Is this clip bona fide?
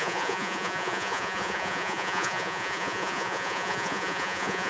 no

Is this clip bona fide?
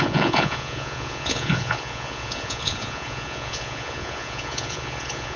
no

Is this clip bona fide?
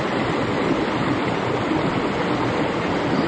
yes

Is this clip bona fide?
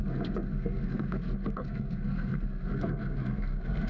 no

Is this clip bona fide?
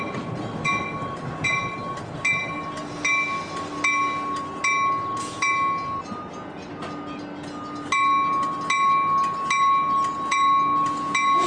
yes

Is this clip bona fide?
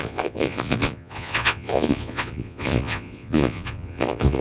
no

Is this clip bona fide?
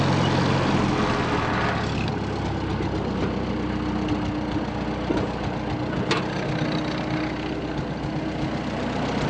yes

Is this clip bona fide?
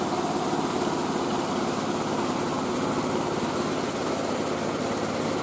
yes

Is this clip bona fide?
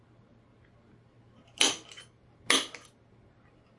yes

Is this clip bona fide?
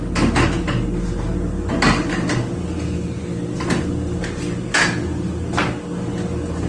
yes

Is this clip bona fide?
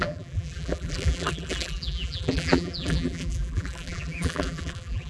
no